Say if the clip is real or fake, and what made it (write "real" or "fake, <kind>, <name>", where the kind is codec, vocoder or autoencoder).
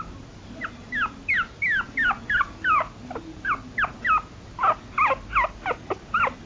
real